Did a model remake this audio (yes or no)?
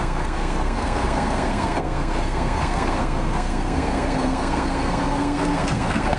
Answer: yes